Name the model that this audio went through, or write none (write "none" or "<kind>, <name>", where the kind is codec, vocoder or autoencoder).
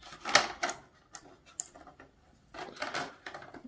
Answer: none